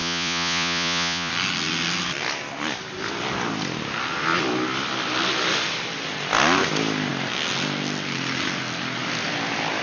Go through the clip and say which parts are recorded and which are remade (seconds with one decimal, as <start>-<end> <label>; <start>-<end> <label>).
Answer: 0.0-1.3 remade; 1.3-9.8 recorded